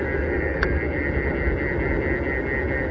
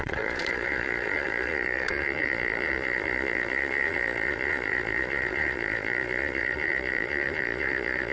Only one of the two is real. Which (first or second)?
first